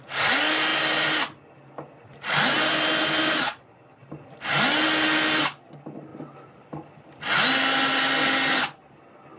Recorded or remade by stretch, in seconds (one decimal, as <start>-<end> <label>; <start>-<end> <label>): 0.0-9.4 recorded